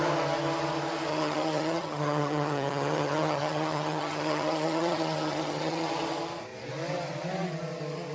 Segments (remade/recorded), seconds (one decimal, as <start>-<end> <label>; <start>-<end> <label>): 0.0-1.1 recorded; 1.1-5.9 remade; 5.9-8.1 recorded